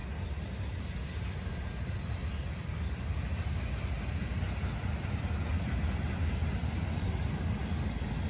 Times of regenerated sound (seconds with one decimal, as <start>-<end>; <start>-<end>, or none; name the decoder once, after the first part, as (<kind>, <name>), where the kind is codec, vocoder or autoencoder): none